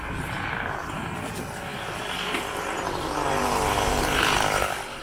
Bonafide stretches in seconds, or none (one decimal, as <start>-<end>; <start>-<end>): 0.0-5.0